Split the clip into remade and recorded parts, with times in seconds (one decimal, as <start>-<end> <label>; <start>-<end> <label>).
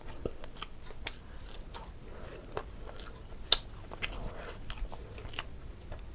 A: 0.0-6.1 recorded